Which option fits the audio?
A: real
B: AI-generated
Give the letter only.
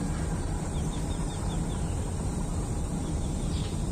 B